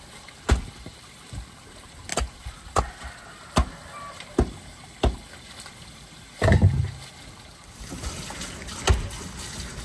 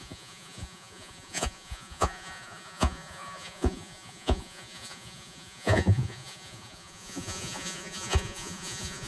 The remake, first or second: second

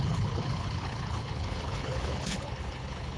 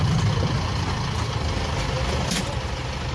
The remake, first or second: first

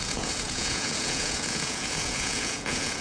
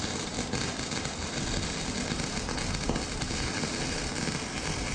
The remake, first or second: first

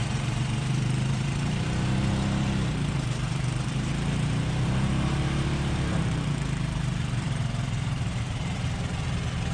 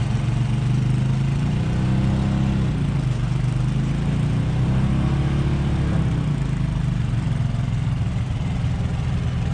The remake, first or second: first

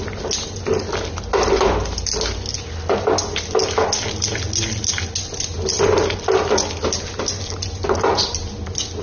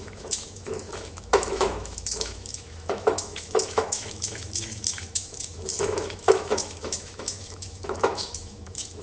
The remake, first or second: second